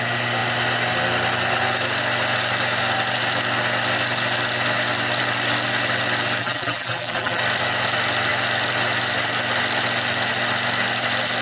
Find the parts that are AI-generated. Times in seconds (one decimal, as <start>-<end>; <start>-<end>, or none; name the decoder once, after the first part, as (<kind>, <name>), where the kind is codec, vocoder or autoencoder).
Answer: 6.4-7.4 (vocoder, BigVGAN v2)